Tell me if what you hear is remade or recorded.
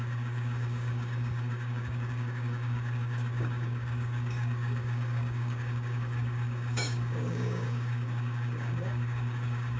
remade